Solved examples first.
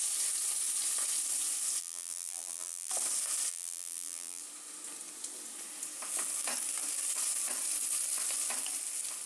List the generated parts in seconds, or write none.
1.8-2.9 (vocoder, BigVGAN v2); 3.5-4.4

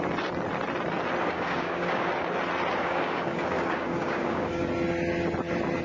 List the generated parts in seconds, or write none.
1.2-2.1 (codec, DAC); 2.8-4.7

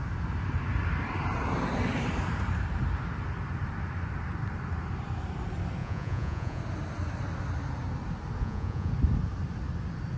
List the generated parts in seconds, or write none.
5.8-6.6 (vocoder, Vocos); 8.4-8.9

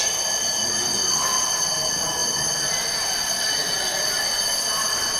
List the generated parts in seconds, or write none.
none

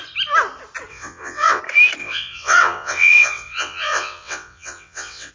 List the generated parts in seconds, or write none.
0.9-1.6 (vocoder, WaveNeXt); 2.0-5.3

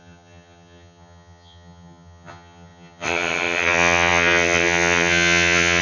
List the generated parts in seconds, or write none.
0.0-5.8 (vocoder, HiFi-GAN)

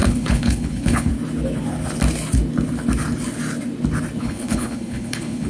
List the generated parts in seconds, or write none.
0.0-1.1 (codec, HILCodec); 4.2-5.5

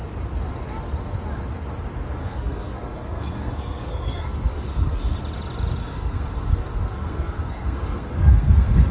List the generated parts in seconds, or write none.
2.2-5.0 (codec, SNAC); 5.8-8.9